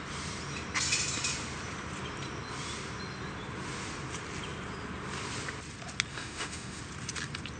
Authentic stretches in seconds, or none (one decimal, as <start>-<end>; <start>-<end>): 0.0-6.1; 6.8-7.6